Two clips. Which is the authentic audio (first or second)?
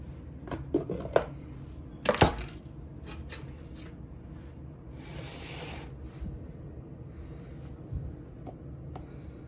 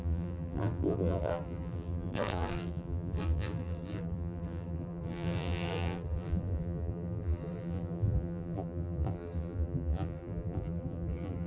first